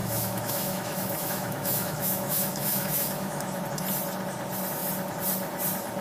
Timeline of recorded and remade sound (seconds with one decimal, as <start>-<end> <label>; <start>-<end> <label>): 0.0-3.6 remade; 3.6-6.0 recorded